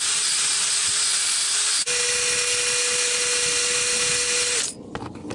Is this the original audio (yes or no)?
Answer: yes